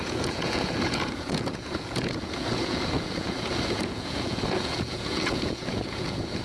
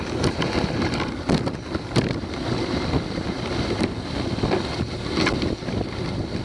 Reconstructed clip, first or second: first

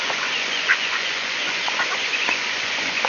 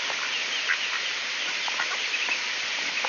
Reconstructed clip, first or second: first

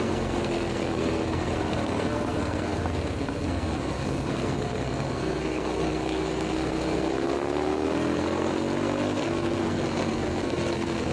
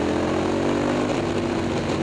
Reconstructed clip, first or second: first